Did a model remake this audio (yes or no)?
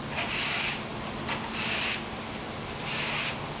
no